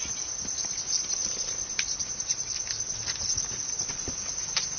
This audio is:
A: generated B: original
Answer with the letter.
B